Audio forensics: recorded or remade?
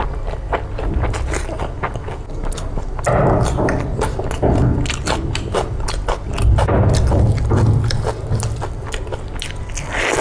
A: recorded